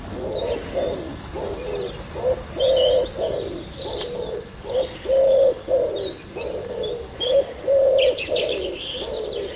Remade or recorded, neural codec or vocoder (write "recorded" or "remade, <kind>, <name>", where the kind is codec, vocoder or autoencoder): recorded